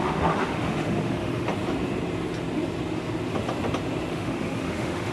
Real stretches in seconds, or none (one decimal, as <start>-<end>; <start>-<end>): 1.5-4.1

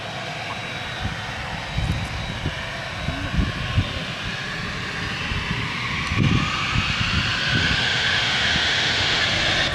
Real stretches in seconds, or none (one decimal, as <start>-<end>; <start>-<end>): 0.0-7.6; 9.2-9.7

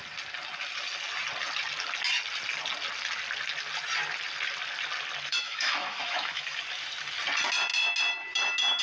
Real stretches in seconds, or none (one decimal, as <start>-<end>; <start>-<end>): 0.0-5.3; 6.6-8.8